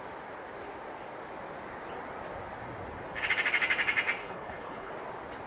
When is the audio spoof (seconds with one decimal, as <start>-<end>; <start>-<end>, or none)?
4.2-4.9